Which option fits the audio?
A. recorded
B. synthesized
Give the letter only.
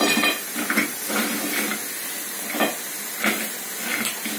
A